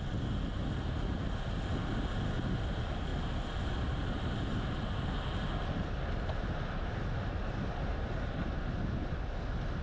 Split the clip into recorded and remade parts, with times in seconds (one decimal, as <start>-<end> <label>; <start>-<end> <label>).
0.0-9.8 recorded